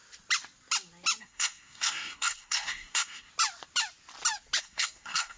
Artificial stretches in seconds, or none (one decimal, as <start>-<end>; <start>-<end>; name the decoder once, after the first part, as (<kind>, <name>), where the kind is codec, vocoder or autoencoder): 1.2-3.3 (codec, SNAC); 4.6-5.4